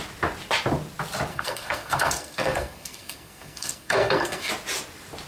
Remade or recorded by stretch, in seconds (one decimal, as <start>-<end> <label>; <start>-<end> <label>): 0.0-1.3 recorded; 1.3-4.5 remade; 4.5-5.3 recorded